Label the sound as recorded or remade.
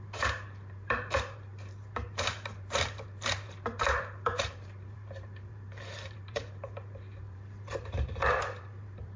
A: remade